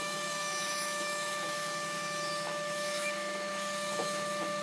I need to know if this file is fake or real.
fake